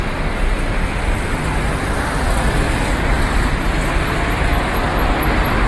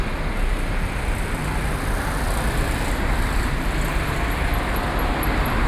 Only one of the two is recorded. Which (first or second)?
second